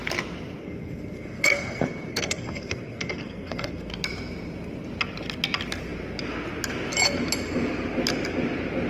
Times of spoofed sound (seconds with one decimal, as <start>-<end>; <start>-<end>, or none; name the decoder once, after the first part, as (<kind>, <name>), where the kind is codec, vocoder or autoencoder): 0.6-3.9 (codec, SNAC)